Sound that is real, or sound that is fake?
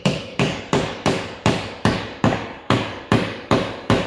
fake